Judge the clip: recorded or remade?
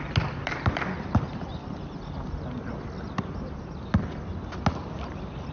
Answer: recorded